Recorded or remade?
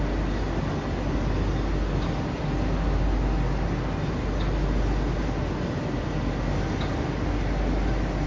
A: recorded